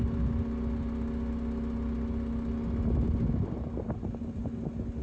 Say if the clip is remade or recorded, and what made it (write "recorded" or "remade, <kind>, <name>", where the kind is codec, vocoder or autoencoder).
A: recorded